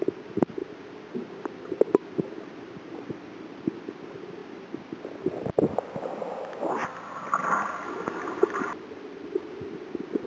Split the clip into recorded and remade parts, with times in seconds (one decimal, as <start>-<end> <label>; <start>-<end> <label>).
0.0-10.3 recorded